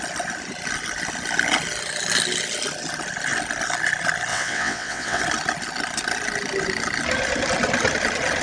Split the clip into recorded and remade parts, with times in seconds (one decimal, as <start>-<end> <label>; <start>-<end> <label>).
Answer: 0.0-4.3 recorded; 4.3-5.2 remade; 5.2-8.4 recorded